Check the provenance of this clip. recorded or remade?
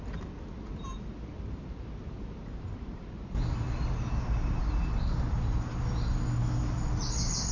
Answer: recorded